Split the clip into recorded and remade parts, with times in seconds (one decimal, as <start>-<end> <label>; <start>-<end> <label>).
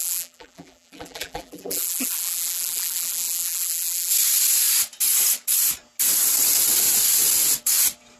0.0-4.1 remade; 4.1-8.2 recorded